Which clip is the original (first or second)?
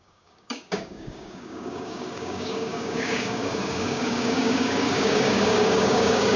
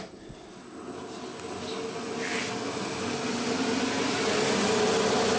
second